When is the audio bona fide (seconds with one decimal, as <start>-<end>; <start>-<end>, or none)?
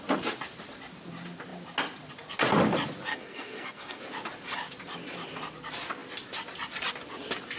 0.0-3.1; 4.0-7.6